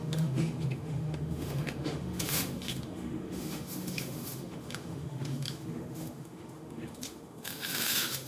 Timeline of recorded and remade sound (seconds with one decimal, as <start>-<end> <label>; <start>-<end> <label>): 0.0-8.3 remade